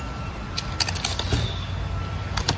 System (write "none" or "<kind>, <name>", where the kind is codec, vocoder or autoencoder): none